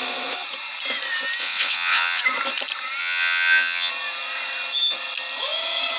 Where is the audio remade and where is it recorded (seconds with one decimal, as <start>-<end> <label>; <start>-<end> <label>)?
0.0-1.4 recorded; 1.4-2.2 remade; 2.2-3.0 recorded; 3.0-3.9 remade; 3.9-6.0 recorded